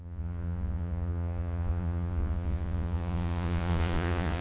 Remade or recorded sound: remade